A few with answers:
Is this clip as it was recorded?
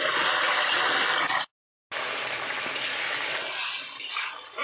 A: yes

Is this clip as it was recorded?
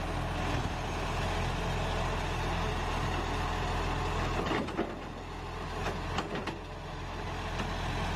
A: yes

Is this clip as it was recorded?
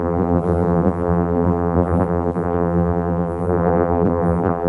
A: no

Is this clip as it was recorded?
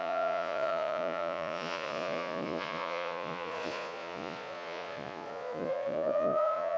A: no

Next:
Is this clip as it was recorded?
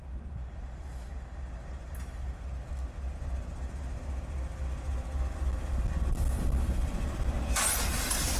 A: yes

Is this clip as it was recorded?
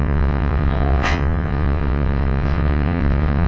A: no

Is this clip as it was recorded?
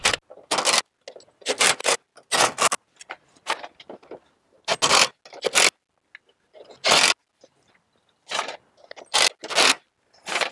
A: yes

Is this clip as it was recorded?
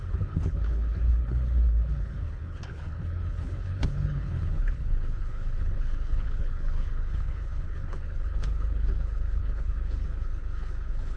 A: no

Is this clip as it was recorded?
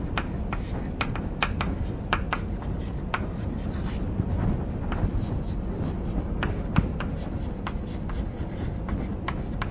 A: yes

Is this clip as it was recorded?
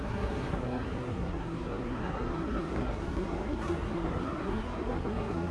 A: no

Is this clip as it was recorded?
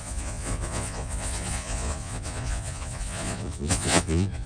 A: no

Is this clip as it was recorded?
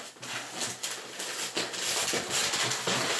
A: yes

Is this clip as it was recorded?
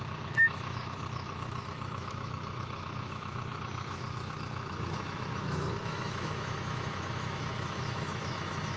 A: no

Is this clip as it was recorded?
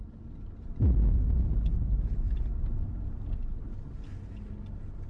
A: yes